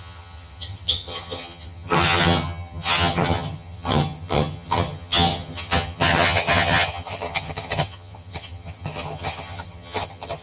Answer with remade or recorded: remade